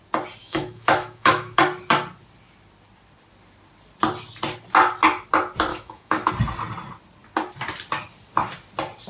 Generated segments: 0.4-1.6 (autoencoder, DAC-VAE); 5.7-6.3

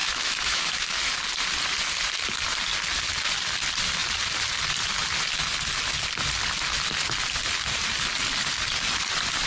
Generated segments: 0.0-1.1 (autoencoder, DAC-VAE)

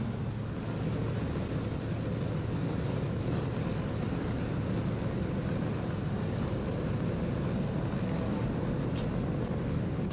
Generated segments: none

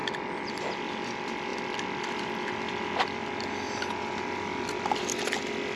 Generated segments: none

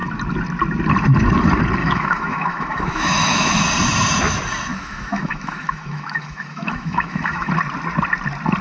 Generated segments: 1.8-3.6 (autoencoder, DAC-VAE); 4.7-7.5

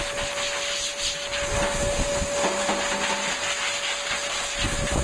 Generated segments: none